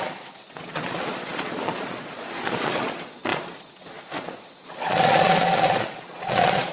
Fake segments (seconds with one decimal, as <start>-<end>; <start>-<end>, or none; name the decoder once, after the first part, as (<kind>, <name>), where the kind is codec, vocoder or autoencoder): 0.0-6.7 (vocoder, Vocos)